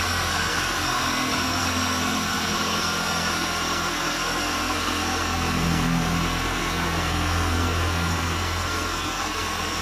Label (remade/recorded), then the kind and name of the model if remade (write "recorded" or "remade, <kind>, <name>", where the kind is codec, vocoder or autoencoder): remade, codec, SNAC